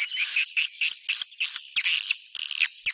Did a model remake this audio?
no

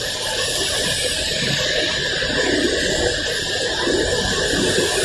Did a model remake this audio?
yes